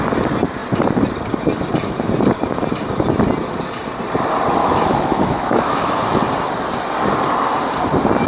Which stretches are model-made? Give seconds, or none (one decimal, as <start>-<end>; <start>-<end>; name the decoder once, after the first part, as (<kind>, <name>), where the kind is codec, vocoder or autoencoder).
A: 4.6-6.0 (autoencoder, DAC-VAE)